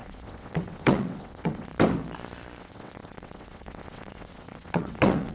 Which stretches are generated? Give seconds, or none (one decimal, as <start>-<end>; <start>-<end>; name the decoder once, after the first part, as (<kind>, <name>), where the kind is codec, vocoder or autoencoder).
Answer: 0.0-1.7 (vocoder, WaveNeXt); 2.6-5.3